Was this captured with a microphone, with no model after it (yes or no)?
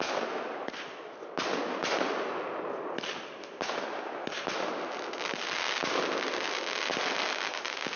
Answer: yes